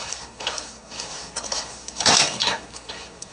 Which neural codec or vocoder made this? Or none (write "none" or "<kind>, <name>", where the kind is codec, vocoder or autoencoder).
codec, SNAC